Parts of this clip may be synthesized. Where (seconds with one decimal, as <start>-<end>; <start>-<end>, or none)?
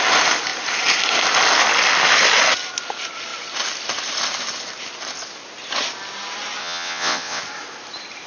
6.6-7.4